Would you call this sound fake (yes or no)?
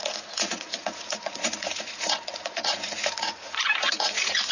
yes